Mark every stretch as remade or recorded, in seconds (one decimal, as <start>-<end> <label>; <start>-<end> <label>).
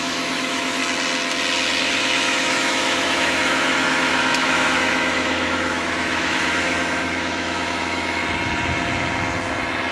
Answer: 0.0-0.8 remade; 0.8-1.8 recorded; 1.8-8.2 remade; 8.2-9.9 recorded